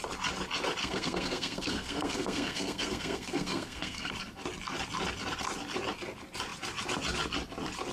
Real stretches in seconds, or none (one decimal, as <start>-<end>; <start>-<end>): 0.0-0.8; 4.1-7.9